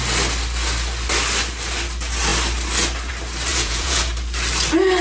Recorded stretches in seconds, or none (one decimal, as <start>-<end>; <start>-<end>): 0.0-3.5; 4.1-5.0